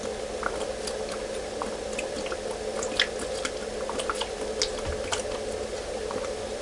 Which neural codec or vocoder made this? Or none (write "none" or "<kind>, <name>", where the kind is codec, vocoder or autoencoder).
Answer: none